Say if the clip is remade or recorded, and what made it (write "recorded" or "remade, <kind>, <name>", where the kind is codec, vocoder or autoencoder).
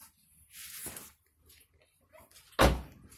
recorded